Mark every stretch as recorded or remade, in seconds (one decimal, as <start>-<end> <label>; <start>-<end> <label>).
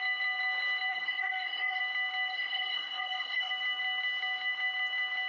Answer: 0.0-0.9 recorded; 0.9-1.8 remade; 1.8-2.3 recorded; 2.3-3.5 remade; 3.5-5.3 recorded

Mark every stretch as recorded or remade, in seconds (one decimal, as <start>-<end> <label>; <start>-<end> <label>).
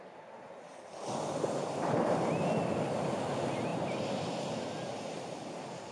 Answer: 0.0-5.9 recorded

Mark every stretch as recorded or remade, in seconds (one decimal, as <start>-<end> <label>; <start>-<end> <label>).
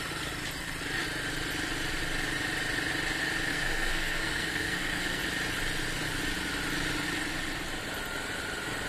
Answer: 0.0-3.5 recorded; 3.5-5.2 remade; 5.2-8.9 recorded